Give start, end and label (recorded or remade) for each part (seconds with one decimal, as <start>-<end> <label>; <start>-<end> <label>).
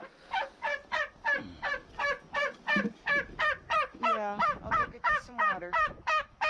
0.0-3.9 recorded; 3.9-6.5 remade